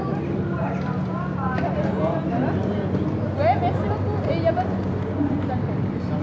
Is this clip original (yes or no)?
yes